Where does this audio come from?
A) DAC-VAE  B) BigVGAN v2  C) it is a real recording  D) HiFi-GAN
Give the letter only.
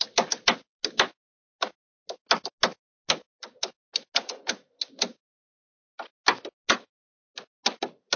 C